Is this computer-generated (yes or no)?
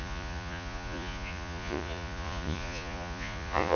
yes